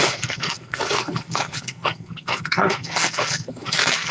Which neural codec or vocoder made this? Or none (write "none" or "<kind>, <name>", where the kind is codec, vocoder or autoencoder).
codec, SNAC